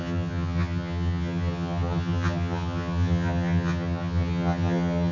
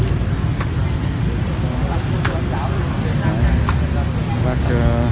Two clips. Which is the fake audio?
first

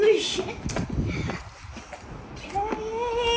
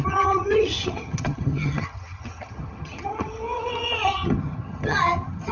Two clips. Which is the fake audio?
second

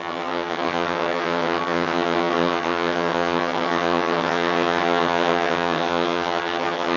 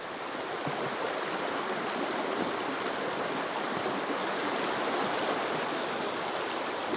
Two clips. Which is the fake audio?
first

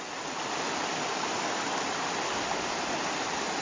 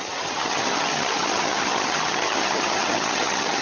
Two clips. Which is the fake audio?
second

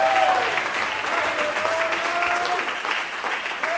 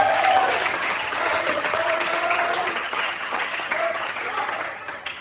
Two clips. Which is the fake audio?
second